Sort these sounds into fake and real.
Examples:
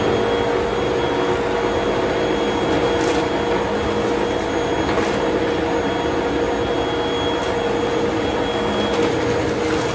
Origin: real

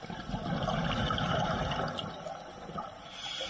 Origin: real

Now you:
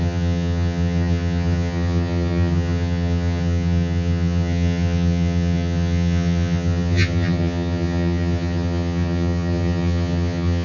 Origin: fake